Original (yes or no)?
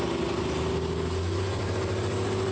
no